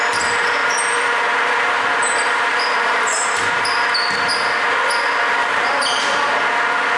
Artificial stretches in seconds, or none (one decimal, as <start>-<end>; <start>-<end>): 0.6-3.5; 5.4-6.3